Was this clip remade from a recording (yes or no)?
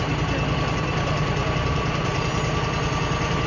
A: no